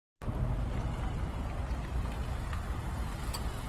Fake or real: real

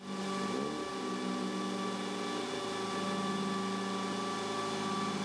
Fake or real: real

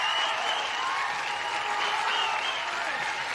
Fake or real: real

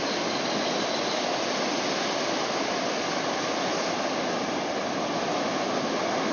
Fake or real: real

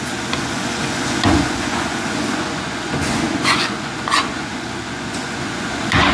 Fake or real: fake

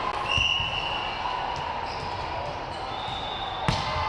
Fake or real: real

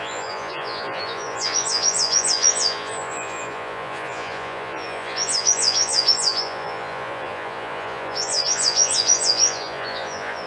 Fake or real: fake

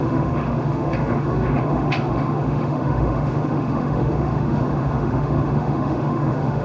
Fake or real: fake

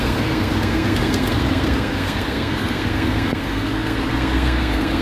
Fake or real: fake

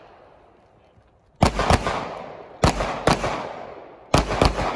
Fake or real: real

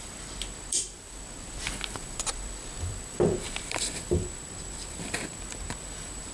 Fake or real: fake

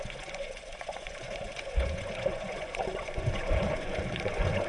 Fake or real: fake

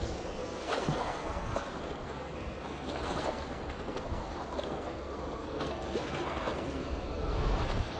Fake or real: fake